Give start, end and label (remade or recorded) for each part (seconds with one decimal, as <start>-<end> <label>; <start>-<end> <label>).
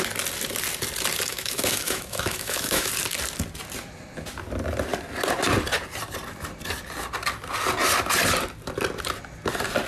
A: 0.0-1.3 recorded; 1.3-2.9 remade; 2.9-9.9 recorded